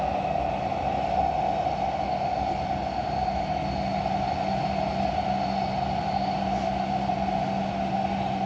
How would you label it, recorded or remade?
recorded